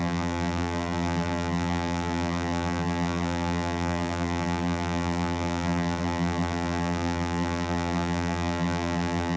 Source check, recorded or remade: remade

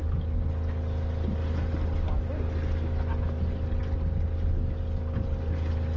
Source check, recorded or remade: recorded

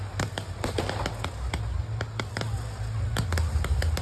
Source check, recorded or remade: recorded